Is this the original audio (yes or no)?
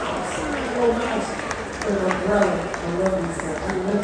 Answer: yes